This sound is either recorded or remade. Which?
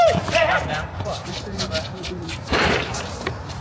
remade